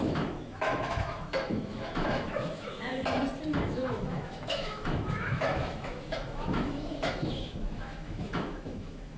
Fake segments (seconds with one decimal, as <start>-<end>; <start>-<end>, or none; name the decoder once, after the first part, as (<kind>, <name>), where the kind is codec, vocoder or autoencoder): 0.0-2.9 (autoencoder, DAC-VAE); 3.6-9.2